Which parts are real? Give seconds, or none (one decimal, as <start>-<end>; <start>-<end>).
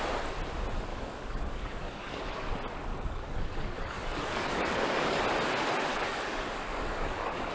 0.0-0.9; 2.5-2.9; 5.2-5.9